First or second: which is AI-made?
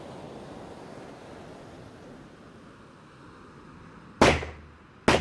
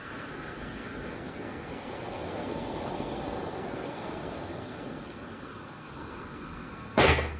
second